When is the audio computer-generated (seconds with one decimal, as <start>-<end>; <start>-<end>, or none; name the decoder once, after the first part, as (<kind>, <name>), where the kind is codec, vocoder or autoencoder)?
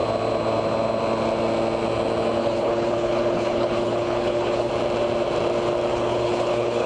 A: 2.4-4.7 (codec, HILCodec); 5.9-6.9